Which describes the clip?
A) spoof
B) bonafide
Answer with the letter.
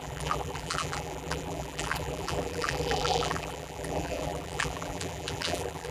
A